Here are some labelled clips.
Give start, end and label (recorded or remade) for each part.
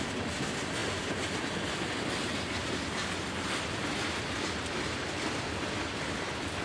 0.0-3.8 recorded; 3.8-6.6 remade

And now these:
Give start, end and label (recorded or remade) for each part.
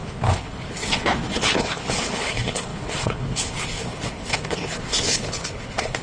0.0-6.0 remade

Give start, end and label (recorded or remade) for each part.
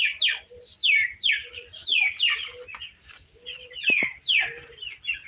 0.0-5.3 recorded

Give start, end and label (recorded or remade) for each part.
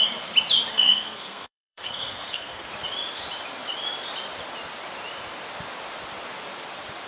0.0-0.7 recorded; 0.7-2.7 remade; 2.7-7.1 recorded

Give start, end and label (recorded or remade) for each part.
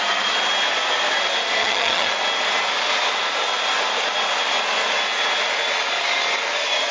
0.0-1.6 recorded; 1.6-2.1 remade; 2.1-6.9 recorded